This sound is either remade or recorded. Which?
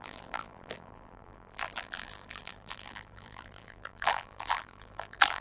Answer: remade